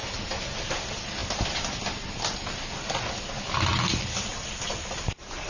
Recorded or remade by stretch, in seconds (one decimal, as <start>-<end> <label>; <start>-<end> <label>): 0.0-5.5 recorded